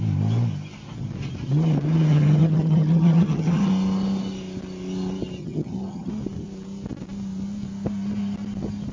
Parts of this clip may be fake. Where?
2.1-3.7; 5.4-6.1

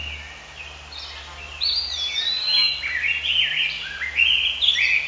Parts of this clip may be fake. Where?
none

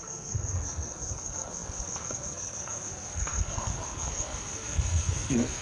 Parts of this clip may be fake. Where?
0.0-5.6